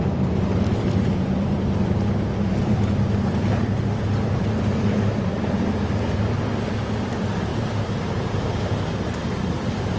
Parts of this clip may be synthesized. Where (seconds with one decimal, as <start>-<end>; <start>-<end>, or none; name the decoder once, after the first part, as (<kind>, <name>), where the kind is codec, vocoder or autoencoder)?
0.0-10.0 (vocoder, BigVGAN v2)